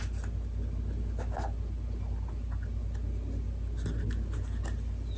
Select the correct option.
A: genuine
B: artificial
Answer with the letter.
A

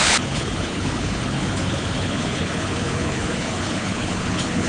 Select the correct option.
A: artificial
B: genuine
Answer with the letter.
A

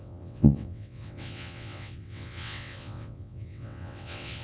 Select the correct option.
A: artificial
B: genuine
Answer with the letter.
A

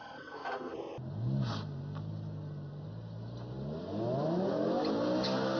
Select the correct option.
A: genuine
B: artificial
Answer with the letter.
A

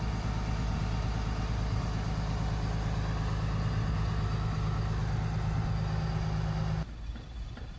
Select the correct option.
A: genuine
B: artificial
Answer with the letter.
A